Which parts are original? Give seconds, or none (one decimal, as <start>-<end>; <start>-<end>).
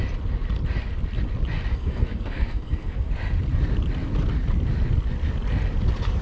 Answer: 0.0-1.7; 3.1-6.2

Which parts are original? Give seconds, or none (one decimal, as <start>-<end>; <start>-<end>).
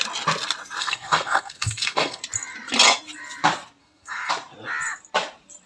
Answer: 0.0-0.8; 2.2-3.8; 4.3-5.7